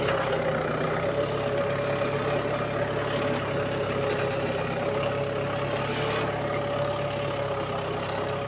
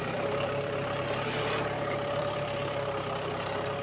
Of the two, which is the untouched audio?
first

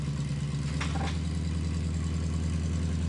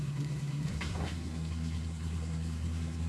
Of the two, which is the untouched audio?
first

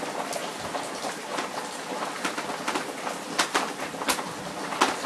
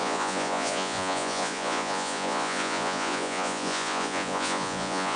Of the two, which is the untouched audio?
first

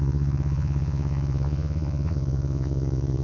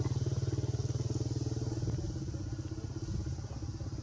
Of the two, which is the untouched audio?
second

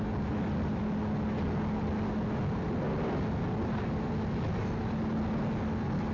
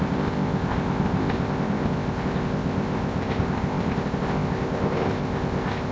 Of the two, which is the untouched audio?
first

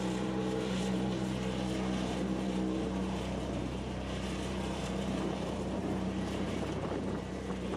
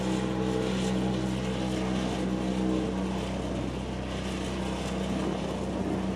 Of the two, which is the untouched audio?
second